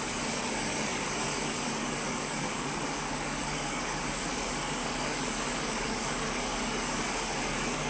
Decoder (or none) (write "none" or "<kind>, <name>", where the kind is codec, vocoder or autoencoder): codec, DAC